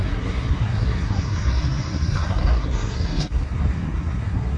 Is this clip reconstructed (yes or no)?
yes